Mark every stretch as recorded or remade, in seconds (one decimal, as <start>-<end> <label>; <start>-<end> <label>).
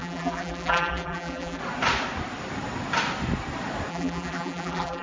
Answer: 0.0-1.6 remade; 1.6-3.9 recorded; 3.9-5.0 remade